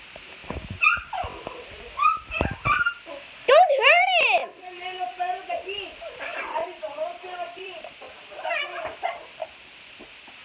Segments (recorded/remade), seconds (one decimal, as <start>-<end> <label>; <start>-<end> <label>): 0.0-0.4 recorded; 0.4-5.5 remade; 5.5-6.3 recorded; 6.3-7.8 remade; 7.8-10.4 recorded